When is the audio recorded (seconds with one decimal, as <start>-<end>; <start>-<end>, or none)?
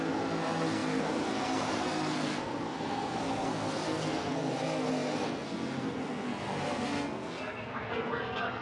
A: none